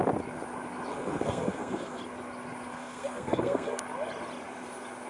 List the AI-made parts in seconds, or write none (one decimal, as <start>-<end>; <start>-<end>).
0.9-2.0; 2.7-3.8